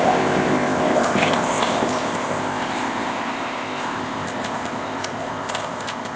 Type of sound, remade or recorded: remade